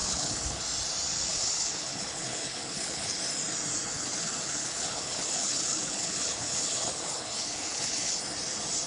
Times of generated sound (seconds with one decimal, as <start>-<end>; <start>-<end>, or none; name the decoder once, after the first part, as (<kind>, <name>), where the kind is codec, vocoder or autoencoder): 0.0-0.6 (codec, HILCodec); 1.3-3.2; 3.9-8.2